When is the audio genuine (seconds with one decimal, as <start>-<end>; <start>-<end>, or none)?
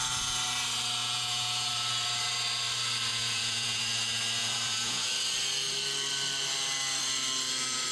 0.0-1.0; 1.7-3.1; 3.8-4.4; 5.1-7.9